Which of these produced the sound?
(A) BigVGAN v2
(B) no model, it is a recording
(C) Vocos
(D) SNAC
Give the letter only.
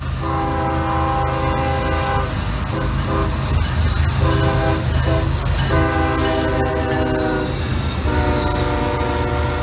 B